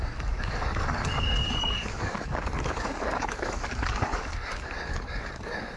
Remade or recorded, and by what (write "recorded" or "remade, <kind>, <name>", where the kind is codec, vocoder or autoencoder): remade, codec, DAC